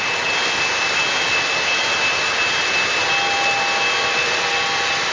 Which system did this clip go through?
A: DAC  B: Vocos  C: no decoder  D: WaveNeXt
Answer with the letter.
C